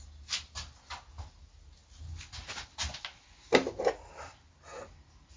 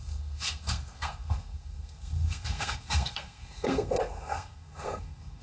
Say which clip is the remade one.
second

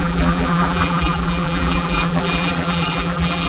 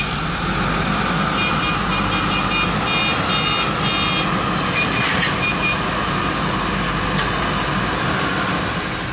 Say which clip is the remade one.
first